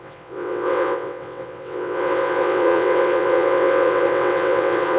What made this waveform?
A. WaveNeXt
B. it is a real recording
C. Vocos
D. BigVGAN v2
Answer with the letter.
A